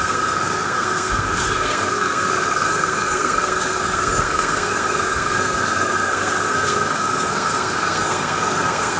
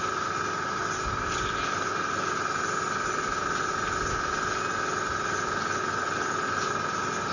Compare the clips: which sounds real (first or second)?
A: second